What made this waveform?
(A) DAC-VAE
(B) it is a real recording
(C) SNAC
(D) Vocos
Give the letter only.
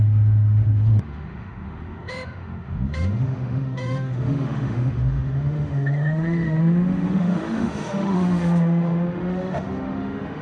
A